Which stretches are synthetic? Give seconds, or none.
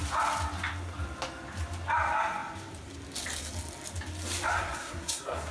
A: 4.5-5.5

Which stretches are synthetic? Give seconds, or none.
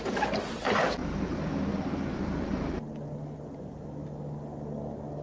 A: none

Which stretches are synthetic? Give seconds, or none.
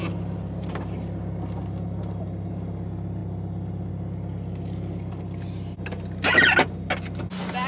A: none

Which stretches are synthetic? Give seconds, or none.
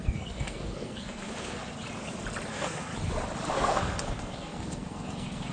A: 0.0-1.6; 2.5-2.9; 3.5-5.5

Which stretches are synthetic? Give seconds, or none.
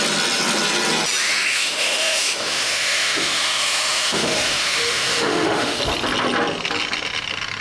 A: 1.2-5.8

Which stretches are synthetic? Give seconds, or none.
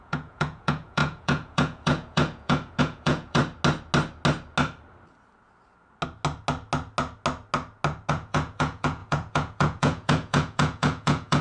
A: 0.0-3.4; 8.1-11.4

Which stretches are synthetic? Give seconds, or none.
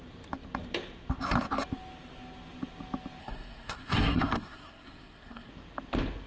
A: 3.2-5.5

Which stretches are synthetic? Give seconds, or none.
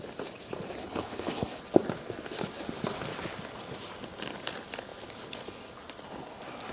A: 0.8-1.6